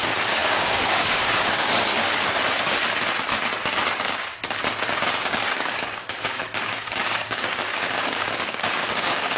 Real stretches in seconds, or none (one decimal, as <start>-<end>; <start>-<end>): 2.4-5.2